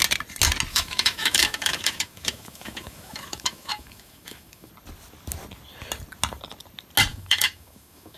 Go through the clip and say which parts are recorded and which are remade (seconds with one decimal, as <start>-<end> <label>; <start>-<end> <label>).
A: 0.0-0.7 recorded; 0.7-4.7 remade; 4.7-7.1 recorded; 7.1-8.2 remade